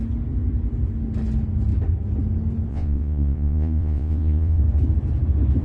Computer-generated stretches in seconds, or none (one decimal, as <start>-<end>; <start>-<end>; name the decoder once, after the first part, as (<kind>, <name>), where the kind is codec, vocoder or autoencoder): 2.7-4.6 (vocoder, Vocos)